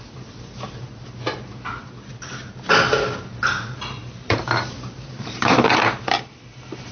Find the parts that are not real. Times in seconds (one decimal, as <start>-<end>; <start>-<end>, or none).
4.0-5.4